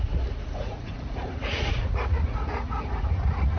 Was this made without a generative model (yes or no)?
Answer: no